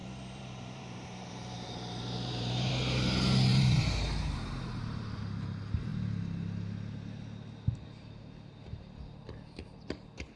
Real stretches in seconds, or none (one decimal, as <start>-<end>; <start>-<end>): 2.7-3.5; 4.4-10.4